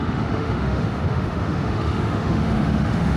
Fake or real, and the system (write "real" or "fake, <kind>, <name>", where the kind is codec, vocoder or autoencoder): fake, autoencoder, DAC-VAE